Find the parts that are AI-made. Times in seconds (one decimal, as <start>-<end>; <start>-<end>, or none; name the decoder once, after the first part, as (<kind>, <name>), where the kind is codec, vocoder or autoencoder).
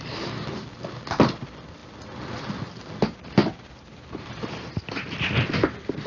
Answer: 3.4-5.1 (vocoder, BigVGAN v2)